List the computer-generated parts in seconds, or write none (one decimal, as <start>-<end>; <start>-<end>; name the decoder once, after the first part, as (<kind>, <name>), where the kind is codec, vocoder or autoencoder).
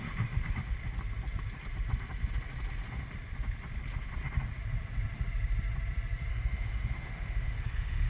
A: 6.3-8.1 (autoencoder, DAC-VAE)